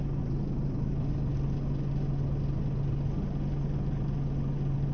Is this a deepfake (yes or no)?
no